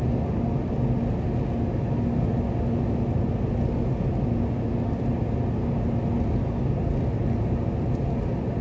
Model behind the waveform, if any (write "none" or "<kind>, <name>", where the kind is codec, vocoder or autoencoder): none